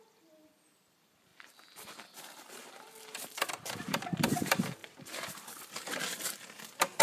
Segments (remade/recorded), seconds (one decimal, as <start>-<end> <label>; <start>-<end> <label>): 0.0-7.0 remade